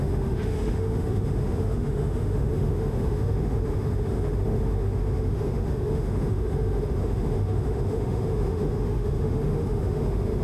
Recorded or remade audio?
remade